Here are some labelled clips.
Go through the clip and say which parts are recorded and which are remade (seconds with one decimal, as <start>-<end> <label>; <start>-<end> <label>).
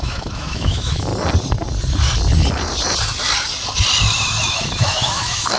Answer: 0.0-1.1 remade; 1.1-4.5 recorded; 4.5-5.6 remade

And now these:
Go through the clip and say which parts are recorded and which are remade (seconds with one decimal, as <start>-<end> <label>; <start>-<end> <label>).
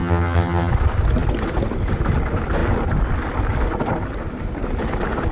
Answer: 0.0-0.7 remade; 0.7-5.3 recorded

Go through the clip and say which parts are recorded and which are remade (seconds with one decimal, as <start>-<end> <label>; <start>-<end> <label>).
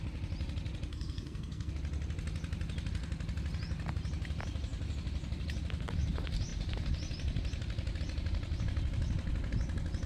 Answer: 0.0-0.9 recorded; 0.9-1.7 remade; 1.7-10.1 recorded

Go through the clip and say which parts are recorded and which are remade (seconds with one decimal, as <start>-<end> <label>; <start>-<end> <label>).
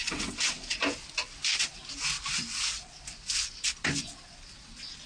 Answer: 0.0-0.8 remade; 0.8-5.1 recorded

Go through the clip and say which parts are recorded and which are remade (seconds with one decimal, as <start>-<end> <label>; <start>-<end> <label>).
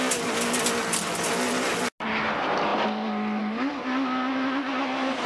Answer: 0.0-5.3 recorded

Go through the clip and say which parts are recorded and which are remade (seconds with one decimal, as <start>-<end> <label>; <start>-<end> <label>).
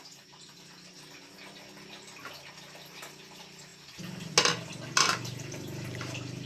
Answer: 0.0-6.5 recorded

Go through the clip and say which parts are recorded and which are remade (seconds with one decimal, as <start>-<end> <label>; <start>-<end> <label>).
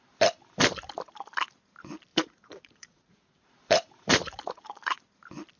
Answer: 0.0-2.1 recorded; 2.1-5.0 remade; 5.0-5.6 recorded